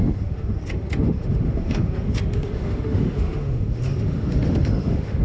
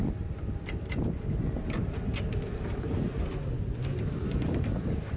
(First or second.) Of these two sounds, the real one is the second